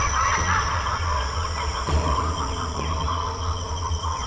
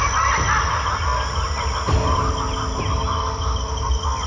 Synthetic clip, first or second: first